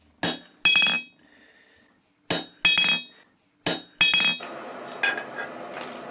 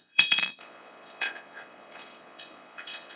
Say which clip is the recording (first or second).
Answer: first